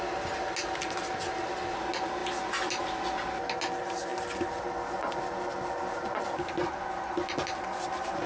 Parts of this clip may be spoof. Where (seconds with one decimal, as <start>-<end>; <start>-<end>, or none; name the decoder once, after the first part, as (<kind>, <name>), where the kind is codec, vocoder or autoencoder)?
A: none